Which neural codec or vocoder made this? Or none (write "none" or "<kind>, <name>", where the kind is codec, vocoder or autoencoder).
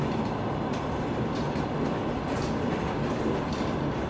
none